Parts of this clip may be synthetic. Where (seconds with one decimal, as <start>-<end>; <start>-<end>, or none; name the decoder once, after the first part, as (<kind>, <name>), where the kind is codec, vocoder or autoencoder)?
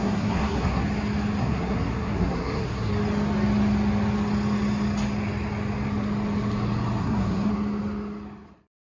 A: 0.0-0.8 (codec, SNAC); 1.4-2.9; 7.0-7.5